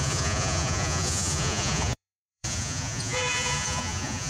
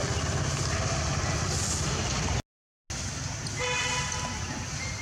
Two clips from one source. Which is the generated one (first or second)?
first